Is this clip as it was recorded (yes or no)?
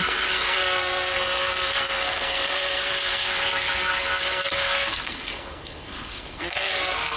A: no